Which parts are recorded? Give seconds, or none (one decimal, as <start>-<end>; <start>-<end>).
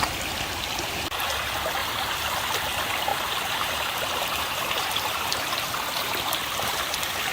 0.0-1.8; 2.5-3.1; 5.4-6.4